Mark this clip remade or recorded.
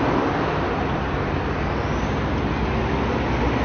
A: recorded